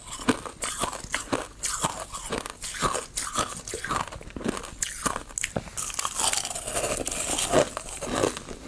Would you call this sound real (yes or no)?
yes